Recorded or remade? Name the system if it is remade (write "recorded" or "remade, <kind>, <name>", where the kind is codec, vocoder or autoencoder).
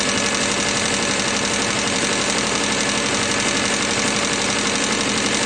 recorded